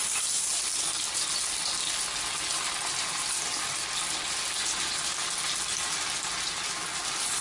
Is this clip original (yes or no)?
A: yes